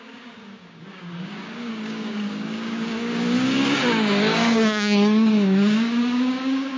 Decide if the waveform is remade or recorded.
remade